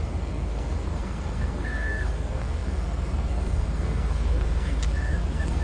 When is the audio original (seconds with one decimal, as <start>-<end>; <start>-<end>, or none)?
none